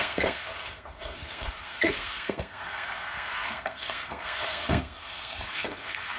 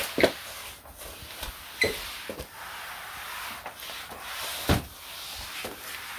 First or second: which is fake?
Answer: first